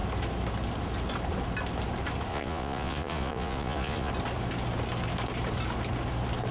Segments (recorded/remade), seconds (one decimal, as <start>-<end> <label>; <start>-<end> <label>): 0.0-2.3 recorded; 2.3-4.1 remade; 4.1-6.5 recorded